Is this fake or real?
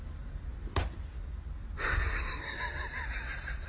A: real